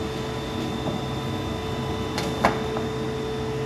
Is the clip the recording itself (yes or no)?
yes